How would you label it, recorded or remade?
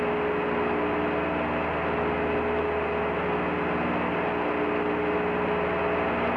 recorded